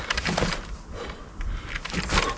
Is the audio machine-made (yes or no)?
no